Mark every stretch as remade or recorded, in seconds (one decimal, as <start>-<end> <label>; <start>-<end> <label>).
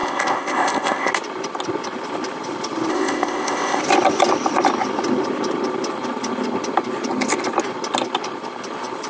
0.0-1.1 remade; 1.1-2.9 recorded; 2.9-3.8 remade; 3.8-9.1 recorded